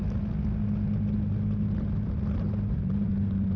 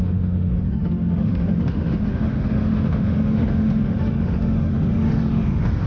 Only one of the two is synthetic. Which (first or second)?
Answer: second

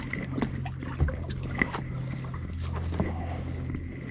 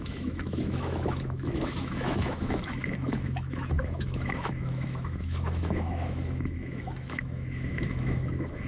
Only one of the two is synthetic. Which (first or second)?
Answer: second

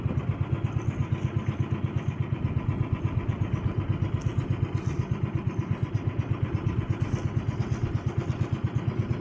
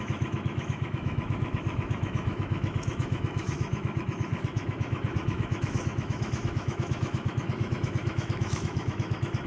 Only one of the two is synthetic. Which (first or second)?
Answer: second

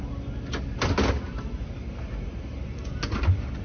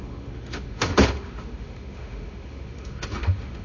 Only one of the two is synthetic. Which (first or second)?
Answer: second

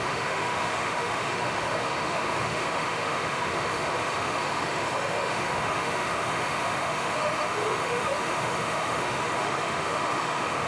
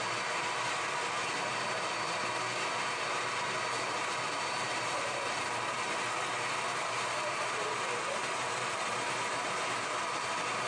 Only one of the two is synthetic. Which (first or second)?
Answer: first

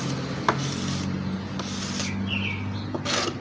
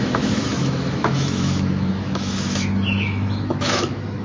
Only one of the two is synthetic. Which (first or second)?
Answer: second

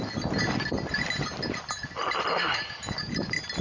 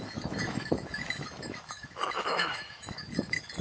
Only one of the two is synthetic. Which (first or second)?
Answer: second